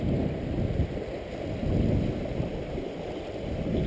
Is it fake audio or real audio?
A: real